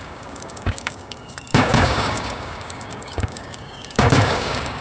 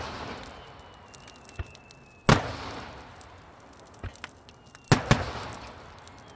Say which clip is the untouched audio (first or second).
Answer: second